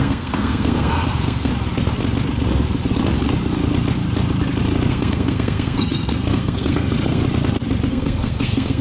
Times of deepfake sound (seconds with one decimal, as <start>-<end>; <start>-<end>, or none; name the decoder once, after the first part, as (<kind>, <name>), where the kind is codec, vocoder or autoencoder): 0.0-1.5 (codec, SNAC); 4.9-7.2; 7.9-8.8